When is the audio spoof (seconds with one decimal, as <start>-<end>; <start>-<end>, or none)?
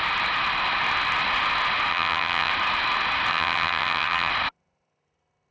1.9-2.5; 3.3-4.3